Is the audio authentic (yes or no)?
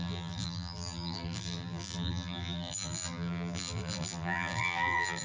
no